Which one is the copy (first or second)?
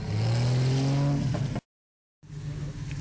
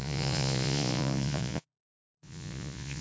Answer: second